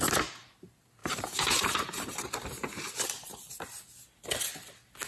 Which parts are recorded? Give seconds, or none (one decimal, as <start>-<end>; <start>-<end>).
0.0-1.0; 3.5-5.1